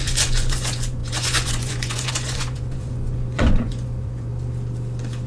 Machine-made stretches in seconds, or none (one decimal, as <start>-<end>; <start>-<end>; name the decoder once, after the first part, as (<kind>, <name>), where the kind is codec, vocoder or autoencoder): 0.0-4.3 (vocoder, Vocos)

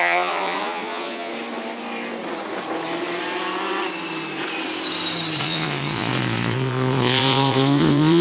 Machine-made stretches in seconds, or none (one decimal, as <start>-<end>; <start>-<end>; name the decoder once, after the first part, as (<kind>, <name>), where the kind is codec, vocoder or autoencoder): 0.0-1.3 (vocoder, Vocos); 5.4-8.2

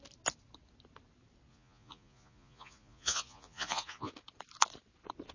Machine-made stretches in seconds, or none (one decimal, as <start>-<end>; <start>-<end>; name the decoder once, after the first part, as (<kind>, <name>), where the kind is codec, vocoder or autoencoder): 1.5-4.1 (vocoder, Vocos)

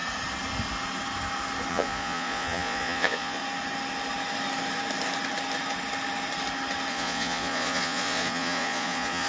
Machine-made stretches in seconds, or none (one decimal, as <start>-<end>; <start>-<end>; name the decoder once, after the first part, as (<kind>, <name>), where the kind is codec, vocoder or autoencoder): 1.7-3.4 (vocoder, Vocos); 6.9-9.3

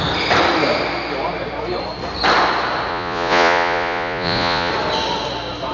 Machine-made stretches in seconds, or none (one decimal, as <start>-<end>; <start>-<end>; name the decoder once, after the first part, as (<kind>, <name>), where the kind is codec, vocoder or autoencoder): 2.9-4.7 (vocoder, Vocos)

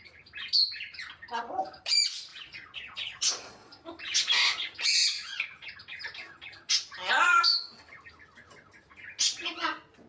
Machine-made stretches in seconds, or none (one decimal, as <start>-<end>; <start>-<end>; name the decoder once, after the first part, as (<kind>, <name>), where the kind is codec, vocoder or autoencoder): 2.3-3.8 (vocoder, Vocos)